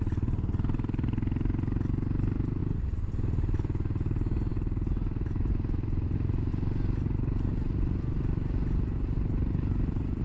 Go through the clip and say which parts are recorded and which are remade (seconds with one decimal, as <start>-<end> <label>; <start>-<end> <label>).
0.0-10.2 recorded